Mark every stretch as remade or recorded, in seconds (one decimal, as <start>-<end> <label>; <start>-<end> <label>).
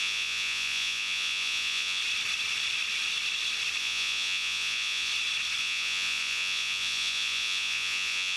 0.0-2.0 remade; 2.0-3.8 recorded; 3.8-5.1 remade; 5.1-5.6 recorded; 5.6-8.4 remade